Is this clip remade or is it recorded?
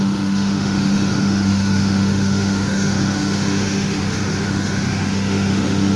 remade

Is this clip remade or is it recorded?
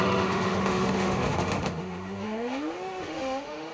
remade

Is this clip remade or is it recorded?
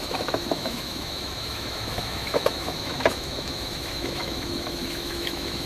remade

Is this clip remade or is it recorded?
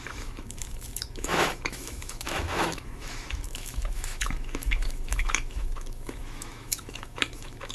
remade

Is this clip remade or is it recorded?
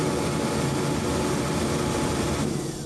recorded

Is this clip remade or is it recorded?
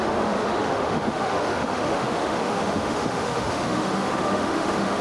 remade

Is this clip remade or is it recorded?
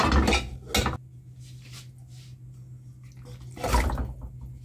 recorded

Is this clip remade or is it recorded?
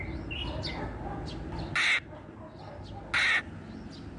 recorded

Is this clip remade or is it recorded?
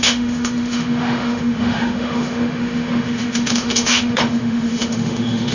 remade